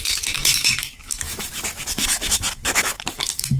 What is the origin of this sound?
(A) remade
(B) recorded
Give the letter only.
A